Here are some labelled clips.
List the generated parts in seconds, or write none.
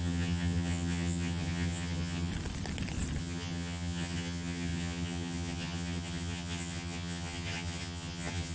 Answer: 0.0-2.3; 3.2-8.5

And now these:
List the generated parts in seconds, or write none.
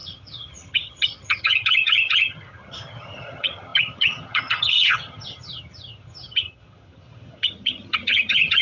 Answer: 0.0-8.6